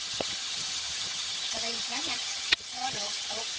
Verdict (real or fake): fake